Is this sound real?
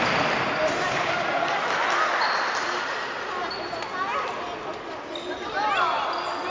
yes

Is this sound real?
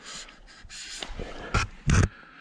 yes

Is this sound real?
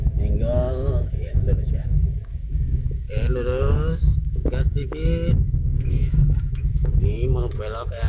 no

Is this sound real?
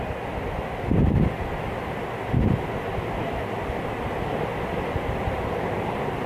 yes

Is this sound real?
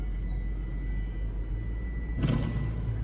yes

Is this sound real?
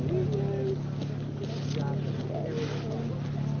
yes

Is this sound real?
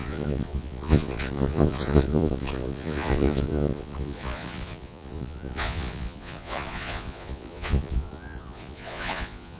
no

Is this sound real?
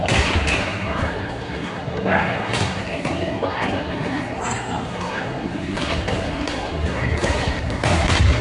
no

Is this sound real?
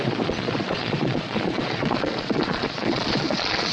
no